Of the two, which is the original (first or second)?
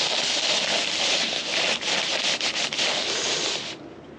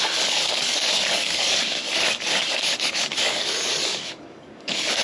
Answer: first